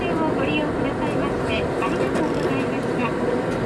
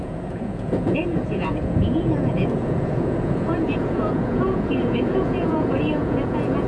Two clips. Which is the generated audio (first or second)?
second